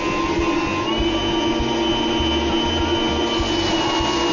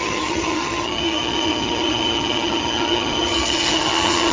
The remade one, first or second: second